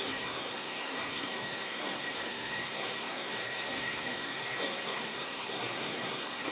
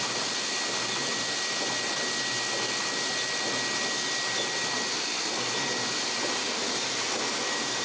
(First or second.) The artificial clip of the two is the first